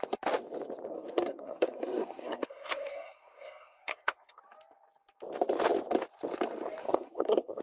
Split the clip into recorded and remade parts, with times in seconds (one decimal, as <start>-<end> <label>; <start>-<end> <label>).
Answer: 0.0-0.9 recorded; 0.9-4.4 remade; 4.4-6.8 recorded; 6.8-7.6 remade